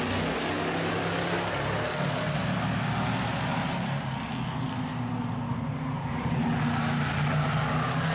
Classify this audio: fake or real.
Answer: real